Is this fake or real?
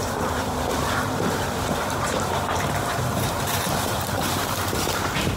fake